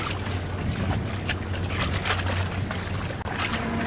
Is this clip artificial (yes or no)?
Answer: no